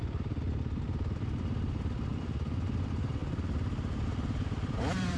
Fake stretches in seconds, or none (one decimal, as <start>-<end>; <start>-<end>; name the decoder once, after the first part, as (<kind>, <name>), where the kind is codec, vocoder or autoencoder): 0.0-5.2 (vocoder, BigVGAN v2)

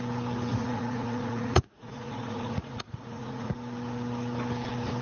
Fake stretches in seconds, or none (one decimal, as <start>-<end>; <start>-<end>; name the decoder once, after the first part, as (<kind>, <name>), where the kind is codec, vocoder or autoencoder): 0.5-3.5 (vocoder, Vocos)